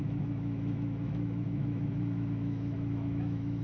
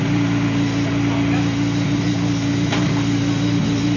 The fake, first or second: first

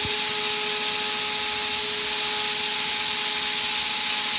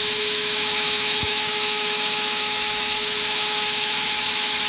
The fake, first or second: second